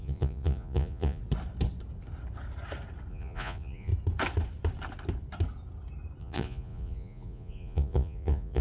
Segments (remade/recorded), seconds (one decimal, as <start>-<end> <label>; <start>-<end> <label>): 0.0-1.2 remade; 1.2-3.1 recorded; 3.1-3.9 remade; 3.9-6.2 recorded; 6.2-8.6 remade